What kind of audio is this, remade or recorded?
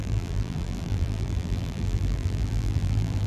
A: remade